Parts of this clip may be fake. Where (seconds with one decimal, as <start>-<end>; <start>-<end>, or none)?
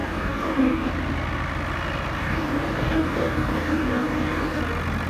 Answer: 0.0-0.9; 2.2-4.6